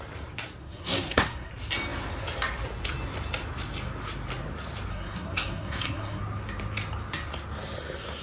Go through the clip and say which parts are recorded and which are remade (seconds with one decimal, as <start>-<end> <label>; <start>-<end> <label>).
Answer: 0.0-0.6 recorded; 0.6-1.5 remade; 1.5-4.9 recorded; 4.9-6.2 remade; 6.2-8.2 recorded